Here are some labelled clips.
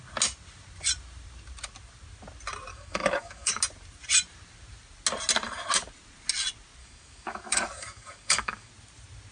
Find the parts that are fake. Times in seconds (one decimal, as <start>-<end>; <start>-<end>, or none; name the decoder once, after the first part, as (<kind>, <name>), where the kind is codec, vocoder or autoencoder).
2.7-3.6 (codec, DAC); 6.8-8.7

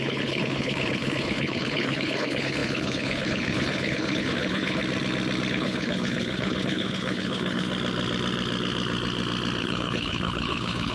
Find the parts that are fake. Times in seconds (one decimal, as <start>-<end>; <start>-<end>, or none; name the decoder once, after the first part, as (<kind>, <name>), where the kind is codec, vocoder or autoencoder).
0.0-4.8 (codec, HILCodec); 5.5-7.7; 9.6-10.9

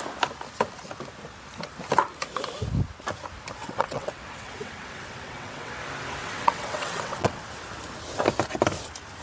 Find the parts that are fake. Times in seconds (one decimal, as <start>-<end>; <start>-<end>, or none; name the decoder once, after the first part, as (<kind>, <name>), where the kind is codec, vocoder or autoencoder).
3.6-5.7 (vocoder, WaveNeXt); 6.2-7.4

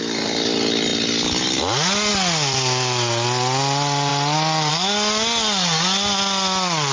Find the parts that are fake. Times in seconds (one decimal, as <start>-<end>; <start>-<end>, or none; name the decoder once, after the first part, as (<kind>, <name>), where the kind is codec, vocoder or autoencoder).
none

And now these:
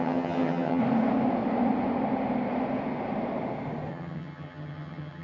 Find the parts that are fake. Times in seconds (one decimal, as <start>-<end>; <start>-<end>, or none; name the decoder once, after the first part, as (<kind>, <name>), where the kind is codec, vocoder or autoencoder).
0.0-0.8 (vocoder, HiFi-GAN); 3.9-5.2

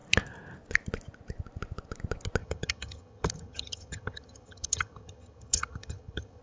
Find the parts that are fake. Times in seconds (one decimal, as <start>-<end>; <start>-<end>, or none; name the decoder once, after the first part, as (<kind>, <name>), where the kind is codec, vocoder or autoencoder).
2.4-6.4 (vocoder, HiFi-GAN)

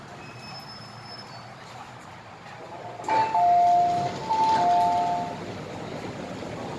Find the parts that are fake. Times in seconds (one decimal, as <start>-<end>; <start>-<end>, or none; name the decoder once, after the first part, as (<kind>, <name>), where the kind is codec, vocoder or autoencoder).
none

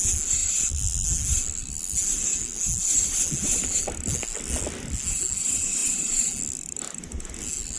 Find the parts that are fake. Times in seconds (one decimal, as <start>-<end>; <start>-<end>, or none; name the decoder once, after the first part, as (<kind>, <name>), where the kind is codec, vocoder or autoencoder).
none